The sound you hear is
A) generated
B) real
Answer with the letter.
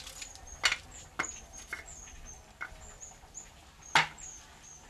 B